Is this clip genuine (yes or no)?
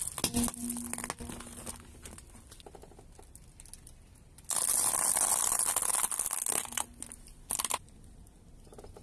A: yes